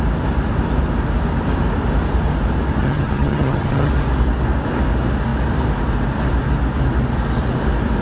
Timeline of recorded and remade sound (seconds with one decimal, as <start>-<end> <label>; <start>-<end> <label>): 0.0-2.8 recorded; 2.8-3.9 remade; 3.9-8.0 recorded